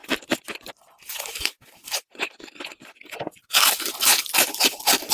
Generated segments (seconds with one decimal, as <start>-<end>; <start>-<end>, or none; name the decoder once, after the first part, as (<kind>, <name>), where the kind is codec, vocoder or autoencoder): none